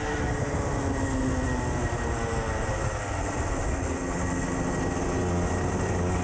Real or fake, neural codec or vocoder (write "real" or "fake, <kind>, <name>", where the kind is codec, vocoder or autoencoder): real